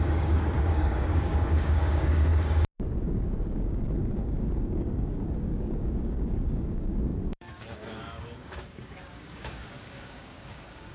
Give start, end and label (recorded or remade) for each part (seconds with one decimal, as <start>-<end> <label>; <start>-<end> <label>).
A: 0.0-2.3 remade; 2.3-3.0 recorded; 3.0-10.9 remade